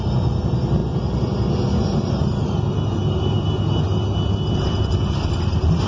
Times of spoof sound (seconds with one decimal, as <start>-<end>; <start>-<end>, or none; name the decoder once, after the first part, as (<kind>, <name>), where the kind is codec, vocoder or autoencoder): none